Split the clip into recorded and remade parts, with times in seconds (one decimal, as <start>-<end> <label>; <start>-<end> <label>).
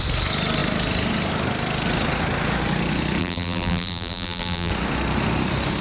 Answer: 0.0-3.2 recorded; 3.2-4.7 remade; 4.7-5.8 recorded